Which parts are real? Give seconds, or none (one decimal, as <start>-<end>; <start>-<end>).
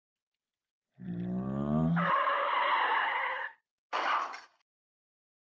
0.0-3.0; 3.6-5.4